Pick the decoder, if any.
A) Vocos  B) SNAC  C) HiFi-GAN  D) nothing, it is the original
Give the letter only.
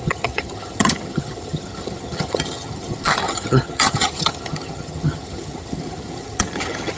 C